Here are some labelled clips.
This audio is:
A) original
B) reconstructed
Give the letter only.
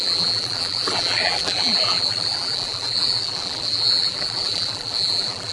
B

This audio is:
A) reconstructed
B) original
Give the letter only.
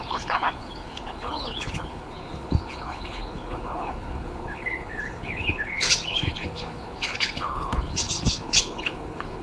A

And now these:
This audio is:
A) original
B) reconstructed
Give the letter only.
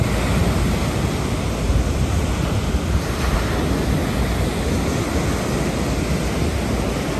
A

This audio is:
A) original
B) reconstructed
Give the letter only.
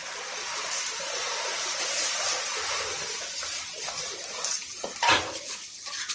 A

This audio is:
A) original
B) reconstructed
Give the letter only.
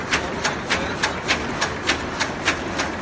A